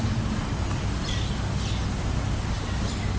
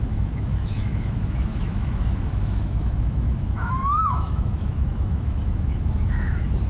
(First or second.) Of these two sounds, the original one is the first